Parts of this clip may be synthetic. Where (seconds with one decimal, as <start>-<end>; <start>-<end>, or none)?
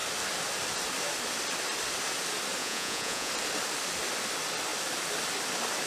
2.6-3.3